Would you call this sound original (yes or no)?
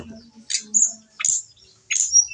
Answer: yes